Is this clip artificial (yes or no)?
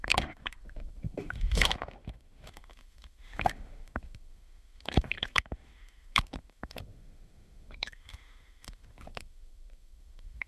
yes